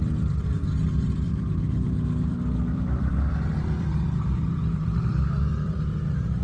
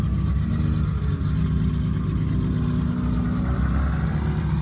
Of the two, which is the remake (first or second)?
first